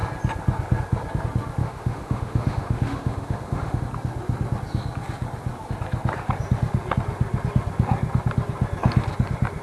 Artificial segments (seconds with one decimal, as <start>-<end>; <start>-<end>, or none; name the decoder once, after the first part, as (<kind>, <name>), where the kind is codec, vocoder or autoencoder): 1.6-3.8 (autoencoder, DAC-VAE)